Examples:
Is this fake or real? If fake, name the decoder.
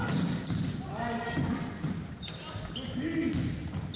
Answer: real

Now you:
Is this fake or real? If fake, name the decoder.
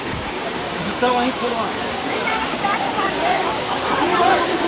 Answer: fake, codec, DAC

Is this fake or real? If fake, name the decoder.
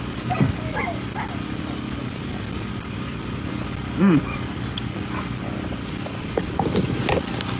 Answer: real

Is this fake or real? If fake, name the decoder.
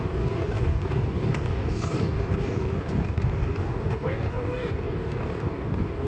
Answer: fake, codec, DAC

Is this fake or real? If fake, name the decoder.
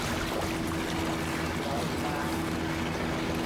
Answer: real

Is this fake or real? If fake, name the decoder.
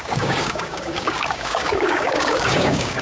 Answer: fake, codec, DAC